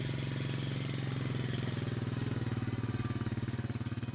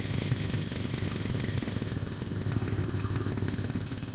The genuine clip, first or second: first